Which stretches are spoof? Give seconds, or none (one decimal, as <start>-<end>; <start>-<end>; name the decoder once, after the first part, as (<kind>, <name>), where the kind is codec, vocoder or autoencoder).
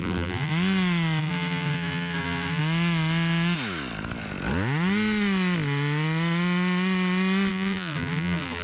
0.0-0.5 (vocoder, BigVGAN v2); 1.2-2.6; 7.5-8.6